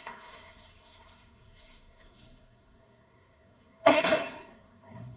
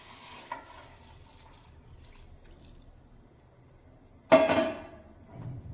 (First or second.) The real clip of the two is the second